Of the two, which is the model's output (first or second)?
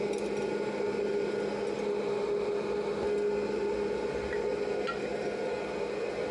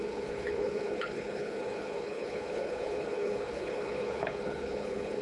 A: second